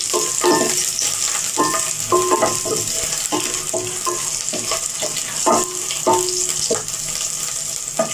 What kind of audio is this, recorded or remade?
recorded